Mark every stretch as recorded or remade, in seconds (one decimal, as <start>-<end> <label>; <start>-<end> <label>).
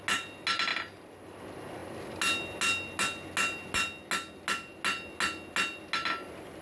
0.0-6.6 recorded